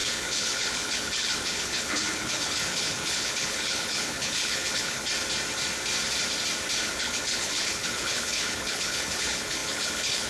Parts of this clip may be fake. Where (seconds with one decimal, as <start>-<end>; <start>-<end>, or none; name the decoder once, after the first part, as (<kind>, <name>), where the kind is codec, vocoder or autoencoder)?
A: 0.0-5.0 (codec, HILCodec); 6.8-10.3